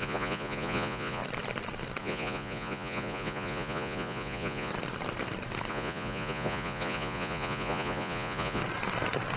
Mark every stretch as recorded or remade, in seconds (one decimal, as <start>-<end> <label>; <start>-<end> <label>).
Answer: 0.0-1.2 remade; 1.2-2.0 recorded; 2.0-4.7 remade; 4.7-5.7 recorded; 5.7-8.6 remade; 8.6-9.4 recorded